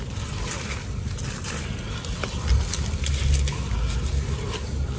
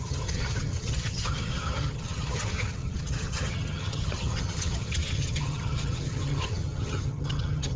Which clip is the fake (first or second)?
second